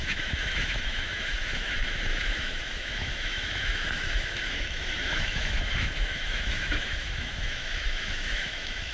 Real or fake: fake